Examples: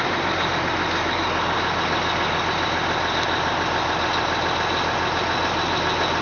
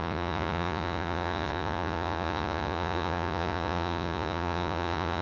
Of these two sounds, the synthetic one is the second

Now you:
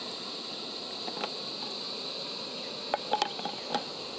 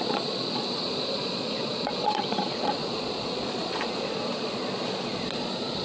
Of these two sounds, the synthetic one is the second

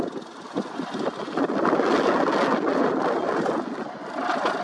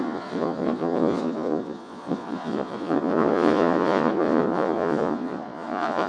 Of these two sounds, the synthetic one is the second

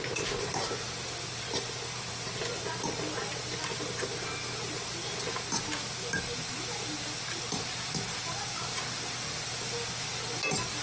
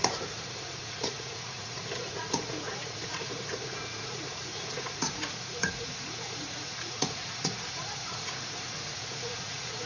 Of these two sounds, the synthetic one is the second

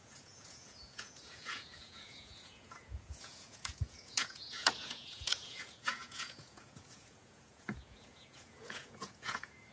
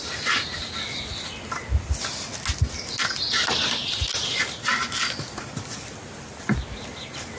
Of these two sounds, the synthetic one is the first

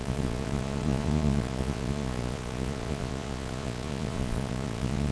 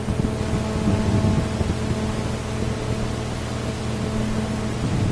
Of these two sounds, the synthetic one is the first